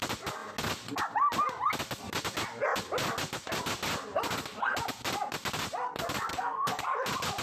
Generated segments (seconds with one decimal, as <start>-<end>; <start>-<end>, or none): 6.3-6.8

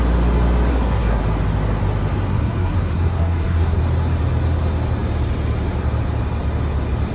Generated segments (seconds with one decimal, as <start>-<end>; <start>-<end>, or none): 0.7-1.2; 2.3-3.8

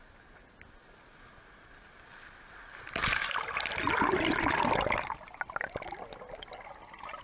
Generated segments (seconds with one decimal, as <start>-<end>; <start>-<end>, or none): none